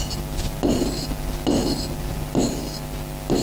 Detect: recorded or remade recorded